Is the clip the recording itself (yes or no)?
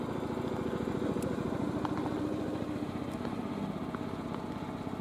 yes